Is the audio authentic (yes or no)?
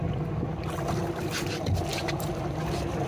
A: yes